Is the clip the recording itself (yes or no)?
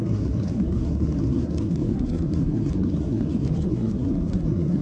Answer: no